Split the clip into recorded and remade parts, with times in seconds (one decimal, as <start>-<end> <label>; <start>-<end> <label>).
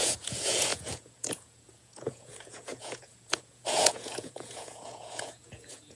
0.0-5.9 remade